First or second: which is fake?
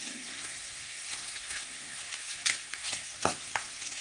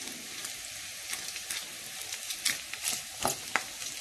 first